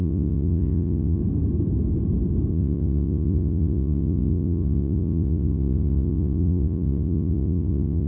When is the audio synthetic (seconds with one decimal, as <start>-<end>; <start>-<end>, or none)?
0.0-1.2; 2.5-8.1